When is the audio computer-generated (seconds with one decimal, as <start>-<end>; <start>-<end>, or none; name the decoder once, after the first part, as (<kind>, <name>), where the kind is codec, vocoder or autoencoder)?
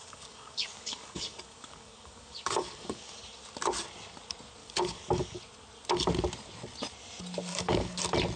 0.0-3.2 (codec, DAC); 4.6-5.4; 7.5-8.0